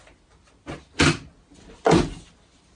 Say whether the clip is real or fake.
real